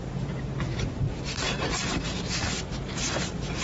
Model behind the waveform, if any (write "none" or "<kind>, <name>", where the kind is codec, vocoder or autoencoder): vocoder, BigVGAN v2